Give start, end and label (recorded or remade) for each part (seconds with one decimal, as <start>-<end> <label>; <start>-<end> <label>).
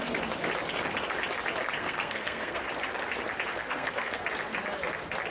0.0-1.8 recorded; 1.8-2.6 remade; 2.6-3.5 recorded; 3.5-4.2 remade; 4.2-5.3 recorded